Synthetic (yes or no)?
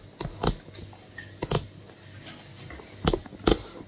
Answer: no